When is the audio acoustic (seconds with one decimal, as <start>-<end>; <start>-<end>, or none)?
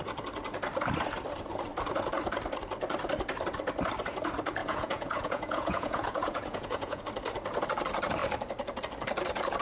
0.0-4.6; 7.0-9.6